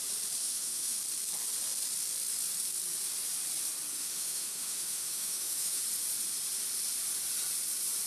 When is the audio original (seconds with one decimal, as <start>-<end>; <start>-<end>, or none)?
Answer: 0.0-0.4; 1.0-3.9; 5.8-8.1